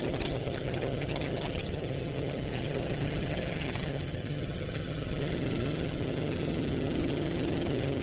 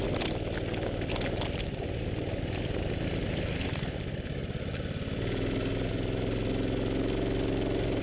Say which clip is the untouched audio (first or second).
second